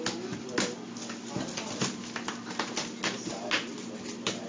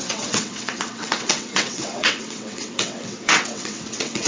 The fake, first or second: second